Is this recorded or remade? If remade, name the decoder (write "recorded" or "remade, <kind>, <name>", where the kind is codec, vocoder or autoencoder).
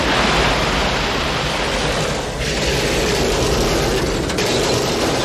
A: recorded